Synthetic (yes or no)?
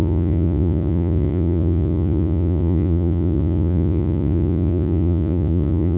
yes